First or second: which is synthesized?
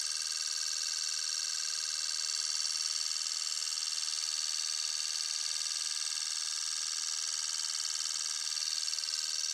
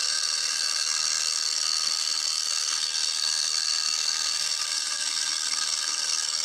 second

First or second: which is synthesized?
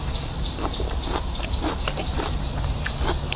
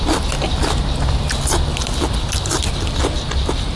first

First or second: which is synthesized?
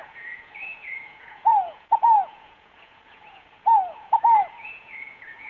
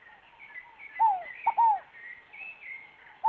first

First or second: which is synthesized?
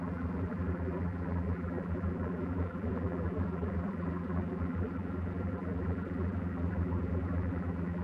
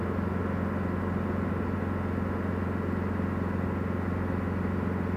first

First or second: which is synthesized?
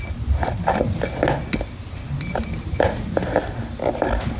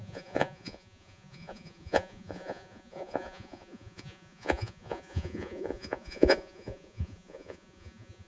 second